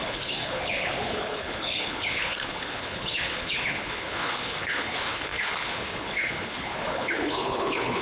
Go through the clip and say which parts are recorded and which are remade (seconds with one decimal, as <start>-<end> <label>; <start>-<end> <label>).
0.0-8.0 remade